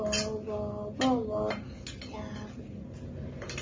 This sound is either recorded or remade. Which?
recorded